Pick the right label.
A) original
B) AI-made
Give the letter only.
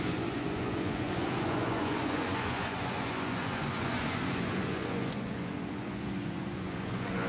B